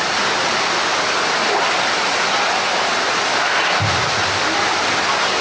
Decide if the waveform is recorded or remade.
recorded